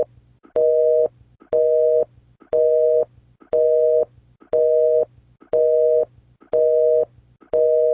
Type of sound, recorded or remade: recorded